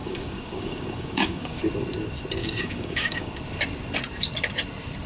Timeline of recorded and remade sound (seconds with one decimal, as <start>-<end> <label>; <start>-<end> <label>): 0.0-1.6 remade; 1.6-2.4 recorded; 2.4-3.3 remade; 3.3-5.1 recorded

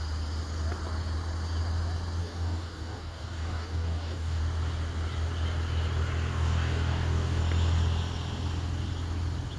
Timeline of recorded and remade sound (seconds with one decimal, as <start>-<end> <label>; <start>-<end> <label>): 0.0-2.2 recorded; 2.2-4.4 remade; 4.4-6.3 recorded; 6.3-7.4 remade; 7.4-9.6 recorded

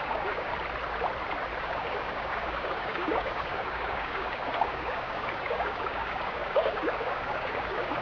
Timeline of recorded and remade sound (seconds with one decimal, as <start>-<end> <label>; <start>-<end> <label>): 0.0-0.5 remade; 0.5-1.6 recorded; 1.6-8.0 remade

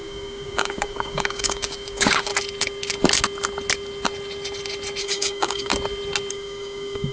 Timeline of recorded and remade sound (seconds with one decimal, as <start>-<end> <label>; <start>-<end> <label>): 0.0-2.3 remade; 2.3-5.0 recorded; 5.0-5.7 remade; 5.7-6.3 recorded; 6.3-7.1 remade

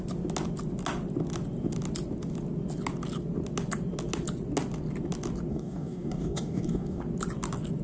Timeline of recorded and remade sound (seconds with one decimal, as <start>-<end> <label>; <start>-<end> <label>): 0.0-5.5 recorded; 5.5-7.0 remade; 7.0-7.8 recorded

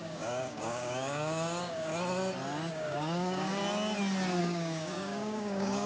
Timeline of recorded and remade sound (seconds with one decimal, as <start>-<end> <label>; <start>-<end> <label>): 0.0-1.9 remade; 1.9-2.7 recorded; 2.7-3.6 remade; 3.6-4.4 recorded; 4.4-5.9 remade

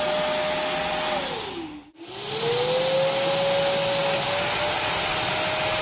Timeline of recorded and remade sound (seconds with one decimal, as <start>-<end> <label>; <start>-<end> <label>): 0.0-5.8 recorded